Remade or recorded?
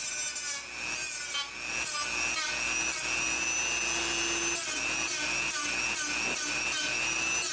recorded